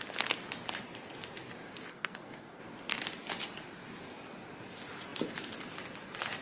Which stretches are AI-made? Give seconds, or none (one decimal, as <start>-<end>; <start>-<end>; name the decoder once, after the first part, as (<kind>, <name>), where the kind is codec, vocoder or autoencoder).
1.9-2.6 (codec, SNAC)